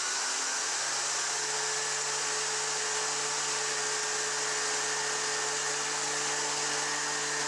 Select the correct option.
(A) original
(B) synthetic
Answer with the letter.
A